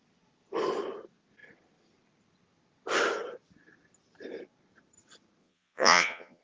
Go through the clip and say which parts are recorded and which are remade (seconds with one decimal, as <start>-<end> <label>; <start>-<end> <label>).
0.0-5.4 recorded; 5.4-6.4 remade